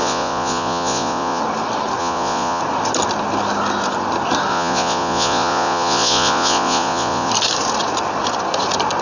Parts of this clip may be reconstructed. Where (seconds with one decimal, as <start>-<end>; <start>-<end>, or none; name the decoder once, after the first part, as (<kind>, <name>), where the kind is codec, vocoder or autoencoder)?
0.0-1.4 (vocoder, Vocos); 2.0-2.6; 4.5-7.3